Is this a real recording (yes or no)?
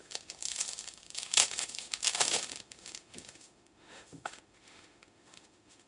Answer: no